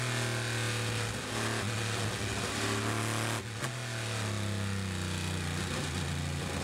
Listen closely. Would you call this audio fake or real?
real